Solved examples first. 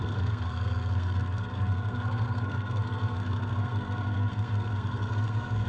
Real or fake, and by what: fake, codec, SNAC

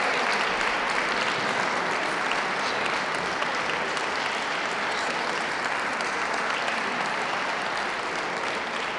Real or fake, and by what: real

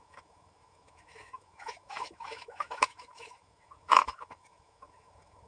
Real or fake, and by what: fake, autoencoder, DAC-VAE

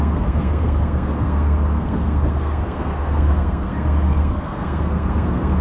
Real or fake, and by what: fake, codec, SNAC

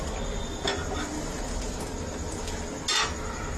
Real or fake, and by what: real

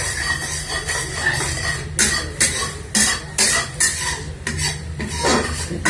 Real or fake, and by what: real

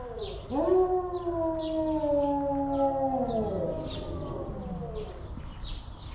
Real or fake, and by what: real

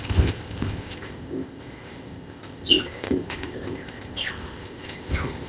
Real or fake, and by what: fake, codec, ZipCodec